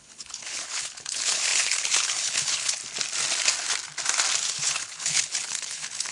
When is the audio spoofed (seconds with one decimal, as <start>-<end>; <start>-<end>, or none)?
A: 0.0-2.8; 4.5-6.1